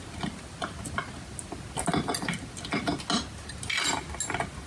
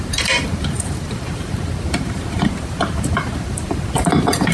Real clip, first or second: first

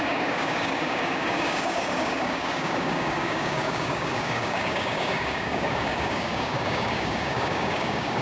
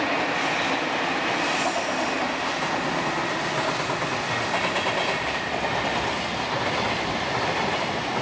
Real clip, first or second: second